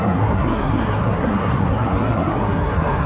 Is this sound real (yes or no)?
no